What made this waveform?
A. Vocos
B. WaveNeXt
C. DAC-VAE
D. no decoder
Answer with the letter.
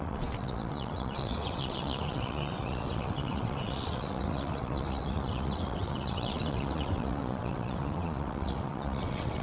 B